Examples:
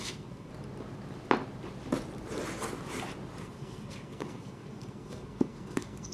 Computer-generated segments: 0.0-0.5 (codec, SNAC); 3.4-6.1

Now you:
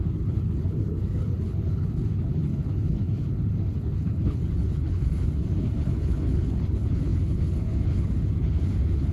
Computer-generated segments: 0.0-9.1 (codec, HILCodec)

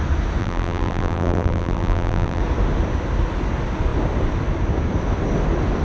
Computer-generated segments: 0.4-2.4 (vocoder, BigVGAN v2)